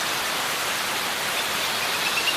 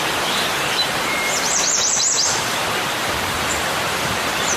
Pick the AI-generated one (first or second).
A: second